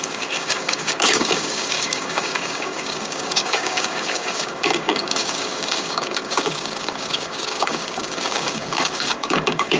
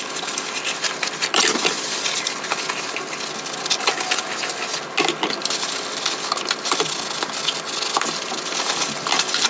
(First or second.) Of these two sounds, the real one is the second